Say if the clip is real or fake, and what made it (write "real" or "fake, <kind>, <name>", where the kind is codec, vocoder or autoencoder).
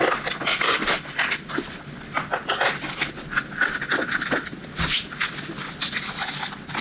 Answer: real